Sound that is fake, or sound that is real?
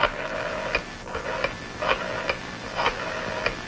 fake